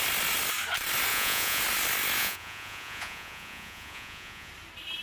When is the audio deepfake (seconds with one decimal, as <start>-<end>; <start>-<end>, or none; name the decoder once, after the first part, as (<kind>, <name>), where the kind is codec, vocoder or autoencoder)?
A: 1.1-1.6 (vocoder, Vocos); 2.2-4.5